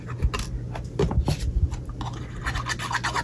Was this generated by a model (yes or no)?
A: no